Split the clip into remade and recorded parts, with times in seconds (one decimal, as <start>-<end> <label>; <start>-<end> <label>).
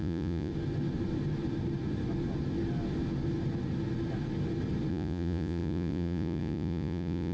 0.0-0.5 remade; 0.5-4.9 recorded; 4.9-7.3 remade